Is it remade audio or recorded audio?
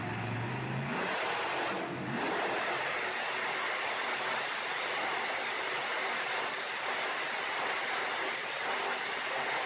recorded